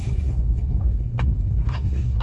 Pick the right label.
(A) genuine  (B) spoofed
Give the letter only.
B